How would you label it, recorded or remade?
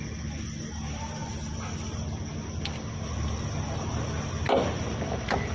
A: recorded